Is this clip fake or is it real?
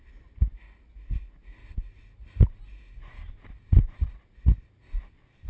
real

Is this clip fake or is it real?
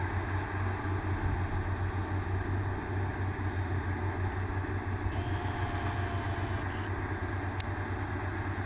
real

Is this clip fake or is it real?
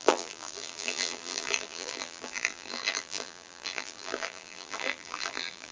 fake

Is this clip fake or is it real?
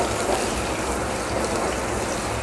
real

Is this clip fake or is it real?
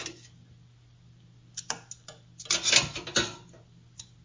real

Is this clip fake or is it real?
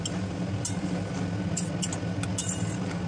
real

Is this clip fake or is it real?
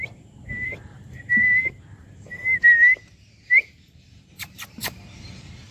fake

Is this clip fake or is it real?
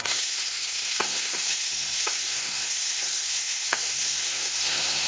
fake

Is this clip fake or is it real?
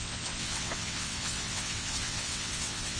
fake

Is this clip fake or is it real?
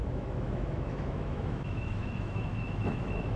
fake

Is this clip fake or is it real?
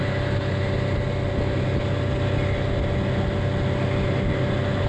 real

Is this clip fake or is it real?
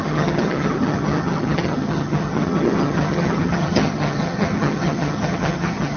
fake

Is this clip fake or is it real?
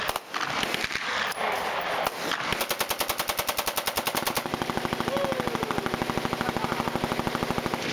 real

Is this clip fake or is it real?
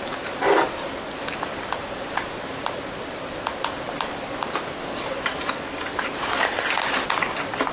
real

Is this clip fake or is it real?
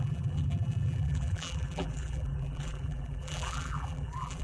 fake